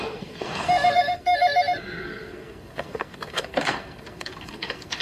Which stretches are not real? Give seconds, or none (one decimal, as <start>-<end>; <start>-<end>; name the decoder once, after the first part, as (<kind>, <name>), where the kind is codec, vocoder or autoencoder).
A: 0.0-5.0 (codec, SNAC)